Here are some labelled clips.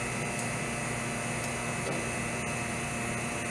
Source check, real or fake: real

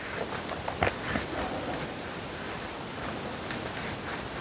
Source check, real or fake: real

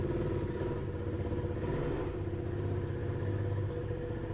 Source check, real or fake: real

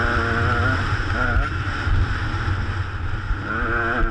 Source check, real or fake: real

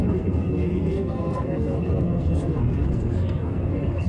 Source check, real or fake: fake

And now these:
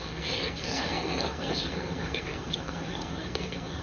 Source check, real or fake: fake